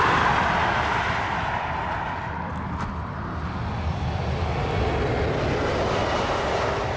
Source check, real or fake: real